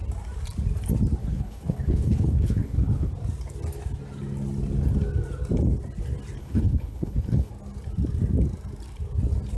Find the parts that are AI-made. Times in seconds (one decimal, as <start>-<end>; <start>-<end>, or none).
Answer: 1.2-3.1; 6.4-7.5